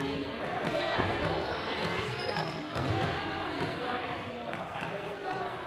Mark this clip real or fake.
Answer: fake